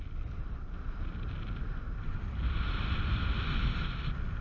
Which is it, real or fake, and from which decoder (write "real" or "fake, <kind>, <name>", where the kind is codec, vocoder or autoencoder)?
real